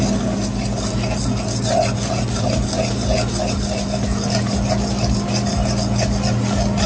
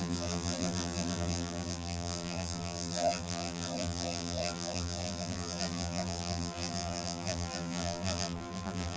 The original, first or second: first